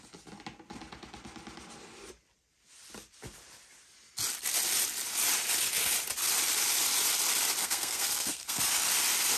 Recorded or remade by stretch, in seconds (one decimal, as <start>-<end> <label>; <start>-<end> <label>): 0.0-7.6 recorded; 7.6-8.6 remade; 8.6-9.4 recorded